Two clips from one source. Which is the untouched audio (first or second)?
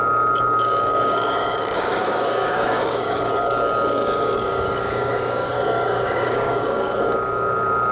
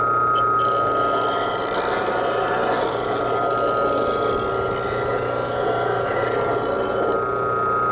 second